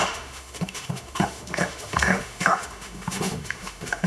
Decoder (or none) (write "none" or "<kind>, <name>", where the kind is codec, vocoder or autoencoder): autoencoder, DAC-VAE